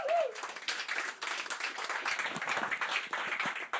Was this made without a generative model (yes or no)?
yes